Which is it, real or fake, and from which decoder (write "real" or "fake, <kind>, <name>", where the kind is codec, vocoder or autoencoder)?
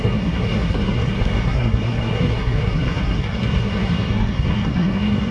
fake, codec, SNAC